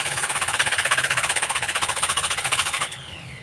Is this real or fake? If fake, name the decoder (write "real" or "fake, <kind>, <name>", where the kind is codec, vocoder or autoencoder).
fake, codec, HILCodec